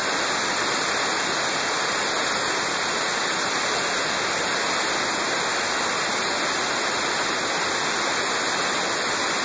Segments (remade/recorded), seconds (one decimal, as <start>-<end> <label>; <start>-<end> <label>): 0.0-9.4 recorded